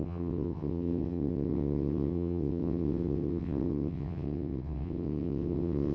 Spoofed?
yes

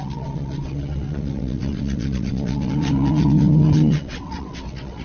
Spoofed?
yes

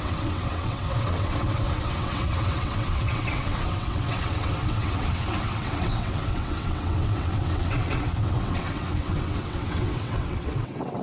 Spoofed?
yes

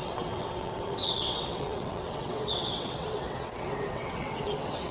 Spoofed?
yes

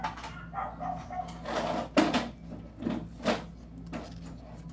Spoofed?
no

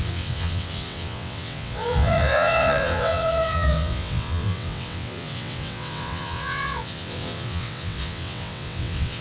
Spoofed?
yes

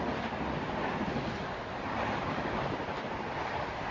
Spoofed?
no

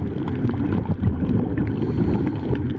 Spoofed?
no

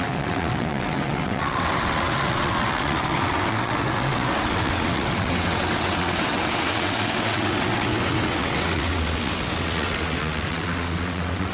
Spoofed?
yes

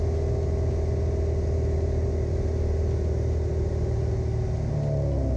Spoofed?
no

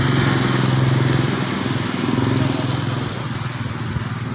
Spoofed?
no